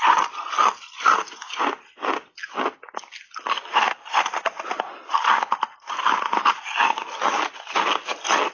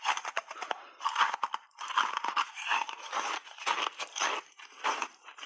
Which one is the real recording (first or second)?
first